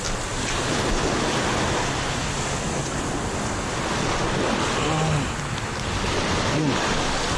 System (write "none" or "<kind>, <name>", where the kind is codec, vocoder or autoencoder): none